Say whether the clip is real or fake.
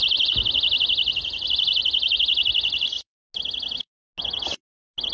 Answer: real